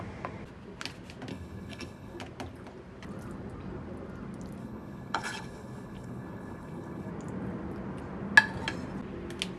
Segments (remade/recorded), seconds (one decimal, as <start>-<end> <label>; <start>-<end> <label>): 0.0-1.3 recorded; 1.3-2.2 remade; 2.2-4.6 recorded; 4.6-7.1 remade; 7.1-9.6 recorded

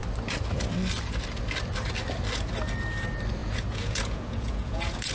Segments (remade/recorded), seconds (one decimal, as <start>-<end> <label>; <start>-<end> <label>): 0.0-3.4 recorded; 3.4-5.1 remade

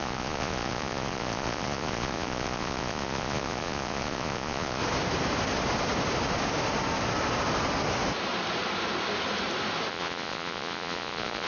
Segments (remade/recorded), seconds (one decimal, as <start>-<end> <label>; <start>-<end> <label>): 0.0-4.8 remade; 4.8-9.9 recorded; 9.9-11.5 remade

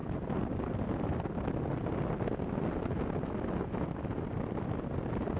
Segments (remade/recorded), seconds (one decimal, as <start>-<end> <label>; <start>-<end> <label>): 0.0-5.4 recorded

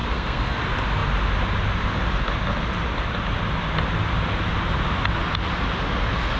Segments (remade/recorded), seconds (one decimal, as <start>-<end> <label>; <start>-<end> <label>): 0.0-0.6 remade; 0.6-6.4 recorded